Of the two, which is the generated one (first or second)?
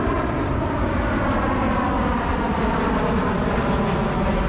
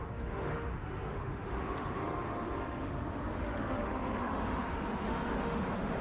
second